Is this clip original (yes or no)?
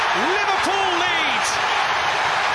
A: yes